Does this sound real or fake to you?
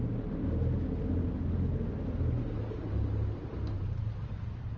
real